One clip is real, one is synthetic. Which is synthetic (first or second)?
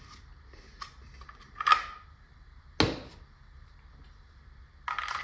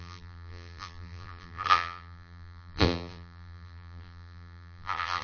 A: second